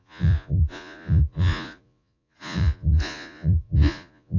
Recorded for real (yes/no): no